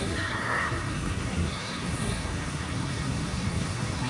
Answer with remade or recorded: remade